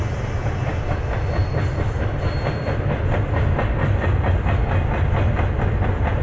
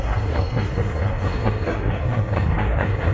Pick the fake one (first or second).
second